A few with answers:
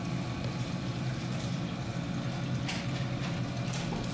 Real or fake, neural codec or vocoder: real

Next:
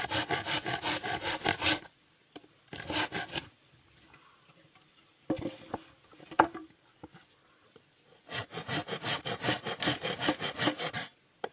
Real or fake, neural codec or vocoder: real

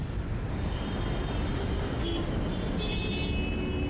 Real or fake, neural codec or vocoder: real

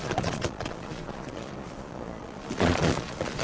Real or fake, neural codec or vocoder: fake, vocoder, Vocos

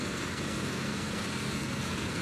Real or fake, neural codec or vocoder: fake, codec, SNAC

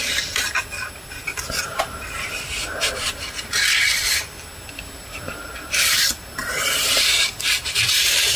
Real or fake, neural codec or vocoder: fake, vocoder, BigVGAN v2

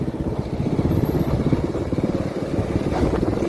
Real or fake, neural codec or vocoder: fake, vocoder, BigVGAN v2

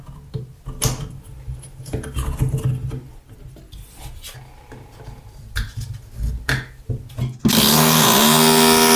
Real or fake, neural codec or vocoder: real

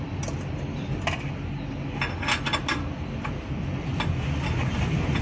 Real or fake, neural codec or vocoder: real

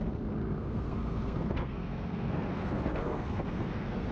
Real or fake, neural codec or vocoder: fake, codec, SNAC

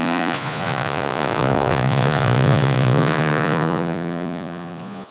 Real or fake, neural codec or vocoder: fake, vocoder, Vocos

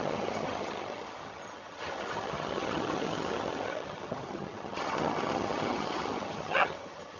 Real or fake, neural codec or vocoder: fake, vocoder, HiFi-GAN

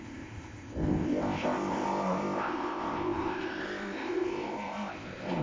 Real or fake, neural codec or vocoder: fake, codec, ZipCodec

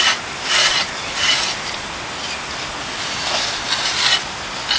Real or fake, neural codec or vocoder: real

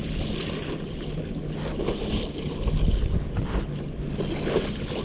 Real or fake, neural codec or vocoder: real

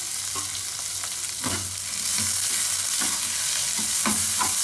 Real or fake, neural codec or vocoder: real